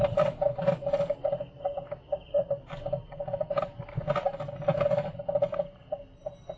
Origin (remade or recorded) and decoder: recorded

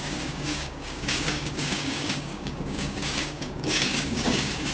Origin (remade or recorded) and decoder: remade, codec, DAC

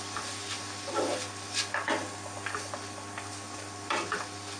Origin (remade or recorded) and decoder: recorded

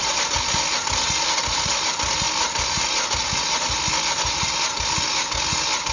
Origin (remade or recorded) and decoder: recorded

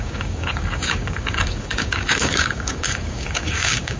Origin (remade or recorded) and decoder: remade, codec, DAC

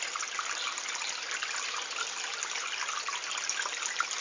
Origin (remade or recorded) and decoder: recorded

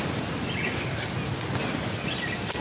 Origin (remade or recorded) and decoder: recorded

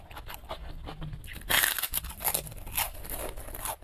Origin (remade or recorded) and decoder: recorded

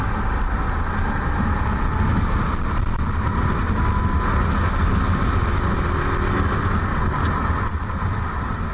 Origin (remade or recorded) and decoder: recorded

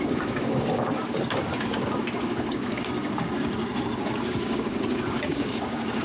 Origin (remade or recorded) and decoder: remade, codec, DAC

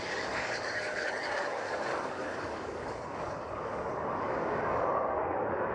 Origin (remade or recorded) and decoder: remade, codec, DAC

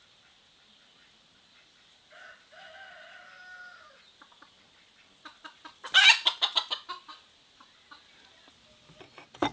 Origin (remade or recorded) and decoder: recorded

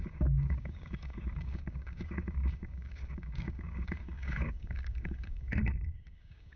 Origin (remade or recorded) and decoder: remade, codec, DAC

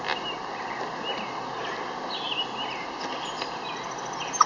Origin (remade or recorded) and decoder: recorded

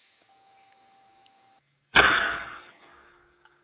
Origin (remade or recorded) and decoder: remade, codec, DAC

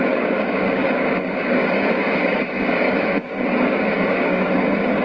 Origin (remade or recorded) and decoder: remade, codec, DAC